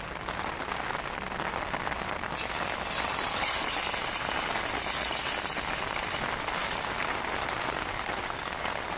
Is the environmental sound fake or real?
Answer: real